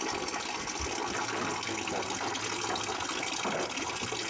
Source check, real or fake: real